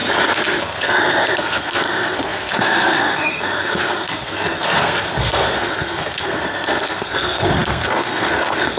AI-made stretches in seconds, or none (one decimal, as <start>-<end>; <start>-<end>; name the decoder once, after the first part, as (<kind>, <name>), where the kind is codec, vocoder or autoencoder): 0.6-8.8 (codec, SNAC)